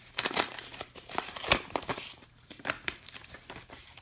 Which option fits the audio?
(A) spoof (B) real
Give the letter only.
A